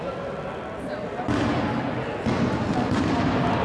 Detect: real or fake real